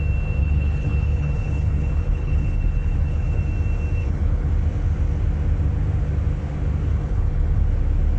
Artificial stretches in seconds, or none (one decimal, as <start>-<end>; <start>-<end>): 0.4-3.4; 4.0-4.5; 6.9-7.6